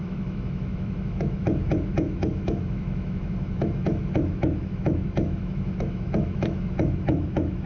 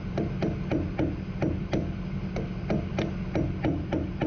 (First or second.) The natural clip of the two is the second